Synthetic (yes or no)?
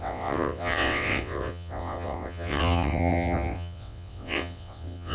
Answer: yes